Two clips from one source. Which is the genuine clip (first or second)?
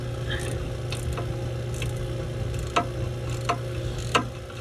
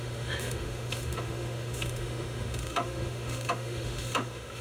first